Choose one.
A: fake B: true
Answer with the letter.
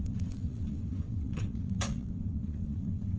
A